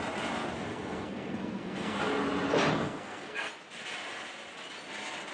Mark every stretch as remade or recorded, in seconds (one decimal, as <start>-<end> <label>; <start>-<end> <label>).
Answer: 0.0-0.7 recorded; 0.7-2.0 remade; 2.0-2.7 recorded; 2.7-3.5 remade; 3.5-5.3 recorded